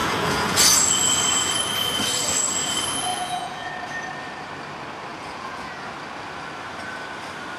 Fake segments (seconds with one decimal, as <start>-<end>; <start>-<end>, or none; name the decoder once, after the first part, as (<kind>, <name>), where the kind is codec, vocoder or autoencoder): 0.0-0.6 (vocoder, Vocos); 3.1-3.7; 5.1-5.7